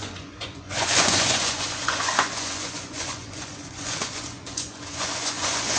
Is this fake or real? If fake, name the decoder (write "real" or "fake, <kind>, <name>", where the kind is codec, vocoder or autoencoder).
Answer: fake, vocoder, Vocos